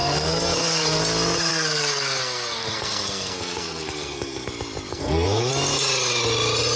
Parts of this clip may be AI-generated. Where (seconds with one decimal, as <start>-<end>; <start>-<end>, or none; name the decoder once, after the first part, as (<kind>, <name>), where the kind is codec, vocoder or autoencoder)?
0.0-1.0 (codec, SNAC); 1.5-4.5; 4.9-5.5